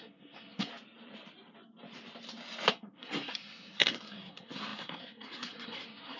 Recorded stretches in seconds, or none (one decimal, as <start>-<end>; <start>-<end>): 0.7-2.7